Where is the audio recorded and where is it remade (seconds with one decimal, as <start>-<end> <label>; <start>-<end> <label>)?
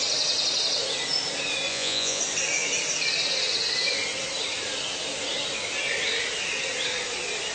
0.0-1.7 recorded; 1.7-2.2 remade; 2.2-7.5 recorded